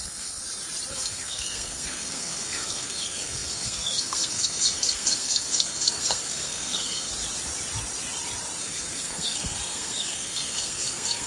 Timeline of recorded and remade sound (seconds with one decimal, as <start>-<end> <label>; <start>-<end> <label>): 0.0-0.4 remade; 0.4-0.9 recorded; 0.9-7.1 remade; 7.1-8.6 recorded; 8.6-11.3 remade